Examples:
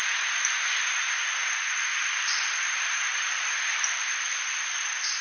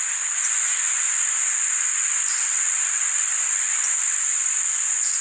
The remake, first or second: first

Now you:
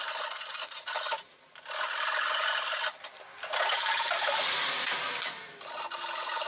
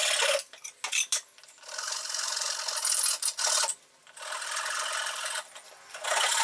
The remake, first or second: first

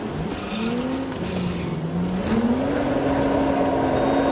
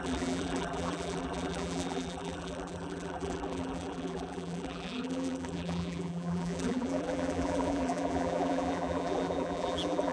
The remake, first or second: second